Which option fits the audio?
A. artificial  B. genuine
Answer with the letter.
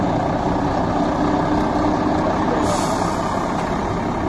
B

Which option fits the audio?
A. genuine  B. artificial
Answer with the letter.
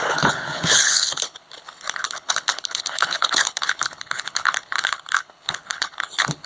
B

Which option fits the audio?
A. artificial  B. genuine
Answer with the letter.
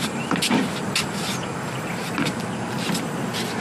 B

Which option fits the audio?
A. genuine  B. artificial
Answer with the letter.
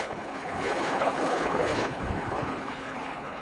B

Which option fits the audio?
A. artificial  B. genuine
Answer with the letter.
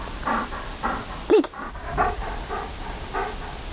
B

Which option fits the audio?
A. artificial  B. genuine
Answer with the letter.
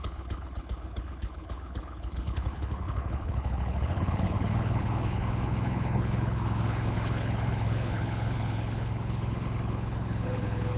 A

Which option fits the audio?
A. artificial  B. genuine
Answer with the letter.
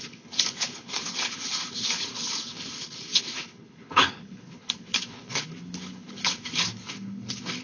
A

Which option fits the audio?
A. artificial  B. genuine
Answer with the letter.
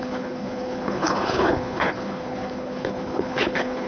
A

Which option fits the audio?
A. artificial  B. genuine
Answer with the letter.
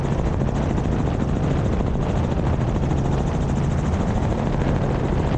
B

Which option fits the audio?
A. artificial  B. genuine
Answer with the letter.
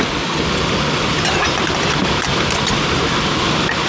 B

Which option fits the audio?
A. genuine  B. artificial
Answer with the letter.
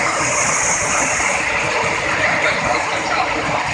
A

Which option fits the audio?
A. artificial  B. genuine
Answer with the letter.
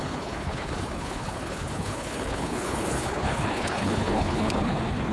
A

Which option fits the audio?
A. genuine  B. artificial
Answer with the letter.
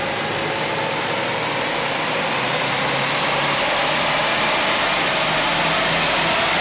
A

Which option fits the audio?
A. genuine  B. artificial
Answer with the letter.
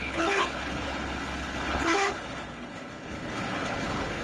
B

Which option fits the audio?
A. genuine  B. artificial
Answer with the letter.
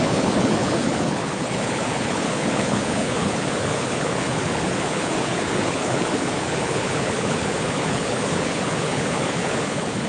B